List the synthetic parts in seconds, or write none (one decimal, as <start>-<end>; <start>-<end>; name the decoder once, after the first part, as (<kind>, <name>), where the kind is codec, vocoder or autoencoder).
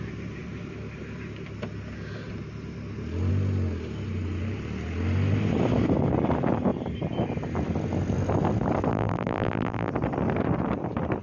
8.9-9.9 (vocoder, BigVGAN v2)